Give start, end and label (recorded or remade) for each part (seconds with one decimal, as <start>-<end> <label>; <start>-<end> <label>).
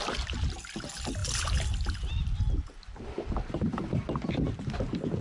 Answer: 0.0-5.2 recorded